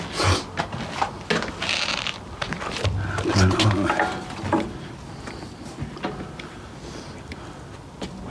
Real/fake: real